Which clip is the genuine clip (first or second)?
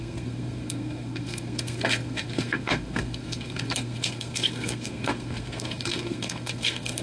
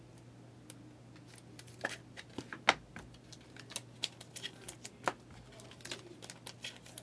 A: second